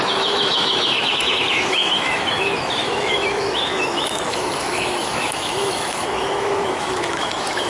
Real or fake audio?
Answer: fake